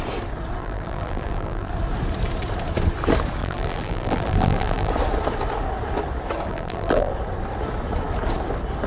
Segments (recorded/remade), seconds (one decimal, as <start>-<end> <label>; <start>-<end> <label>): 0.0-0.6 recorded; 0.6-1.7 remade; 1.7-3.4 recorded; 3.4-4.9 remade; 4.9-6.5 recorded; 6.5-7.1 remade; 7.1-8.9 recorded